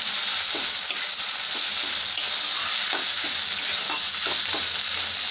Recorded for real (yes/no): yes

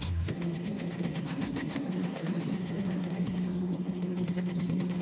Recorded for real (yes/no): no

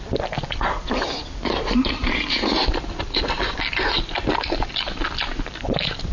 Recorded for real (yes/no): yes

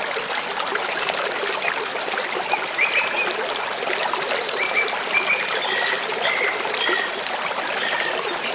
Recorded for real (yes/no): yes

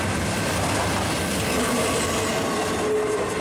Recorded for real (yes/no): yes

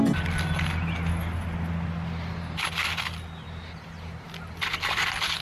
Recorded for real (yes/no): yes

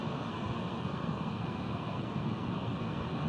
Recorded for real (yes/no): no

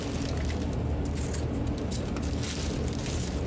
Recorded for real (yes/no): yes